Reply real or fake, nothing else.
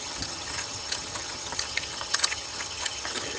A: fake